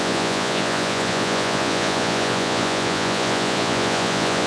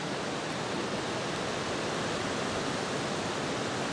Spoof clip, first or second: first